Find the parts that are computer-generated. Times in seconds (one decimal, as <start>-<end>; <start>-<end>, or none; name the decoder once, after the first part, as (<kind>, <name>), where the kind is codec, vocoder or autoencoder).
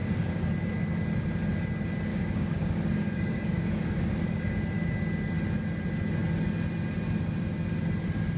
0.0-0.5 (codec, DAC); 2.1-4.6